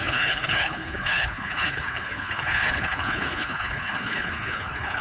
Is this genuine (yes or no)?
no